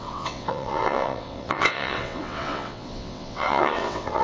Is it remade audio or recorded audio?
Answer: remade